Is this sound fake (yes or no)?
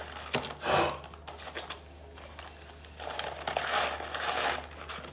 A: no